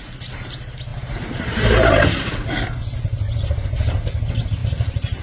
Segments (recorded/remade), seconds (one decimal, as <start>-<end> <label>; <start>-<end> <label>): 0.0-0.9 recorded; 0.9-4.0 remade; 4.0-4.6 recorded; 4.6-5.2 remade